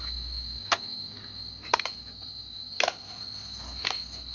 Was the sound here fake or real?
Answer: real